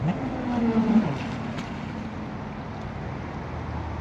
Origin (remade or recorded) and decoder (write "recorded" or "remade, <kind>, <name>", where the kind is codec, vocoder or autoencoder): recorded